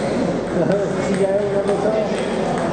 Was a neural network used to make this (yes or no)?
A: no